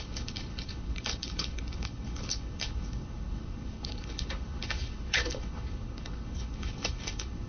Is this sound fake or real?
fake